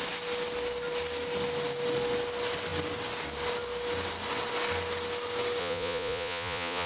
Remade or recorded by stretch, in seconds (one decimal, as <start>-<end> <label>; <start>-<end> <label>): 0.0-5.6 recorded; 5.6-6.9 remade